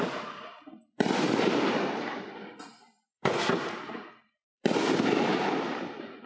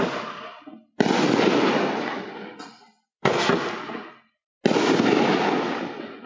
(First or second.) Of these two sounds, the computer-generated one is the first